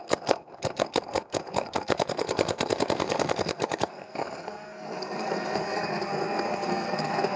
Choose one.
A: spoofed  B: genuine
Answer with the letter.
A